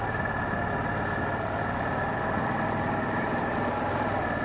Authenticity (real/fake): real